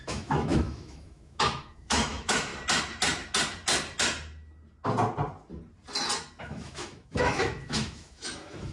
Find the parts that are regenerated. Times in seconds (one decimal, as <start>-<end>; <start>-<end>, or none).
0.0-2.5; 6.4-8.7